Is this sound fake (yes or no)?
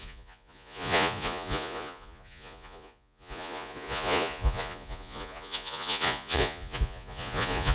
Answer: yes